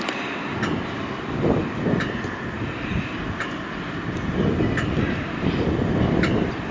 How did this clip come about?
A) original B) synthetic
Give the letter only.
A